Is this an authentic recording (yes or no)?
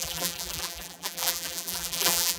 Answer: no